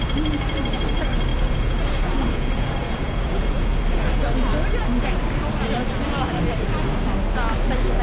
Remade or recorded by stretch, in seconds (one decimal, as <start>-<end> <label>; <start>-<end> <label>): 0.0-1.3 recorded; 1.3-4.2 remade; 4.2-8.0 recorded